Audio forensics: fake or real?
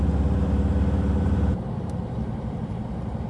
real